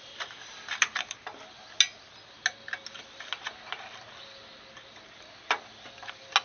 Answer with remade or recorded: recorded